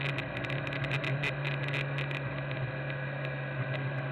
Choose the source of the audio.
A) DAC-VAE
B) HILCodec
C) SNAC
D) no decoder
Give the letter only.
D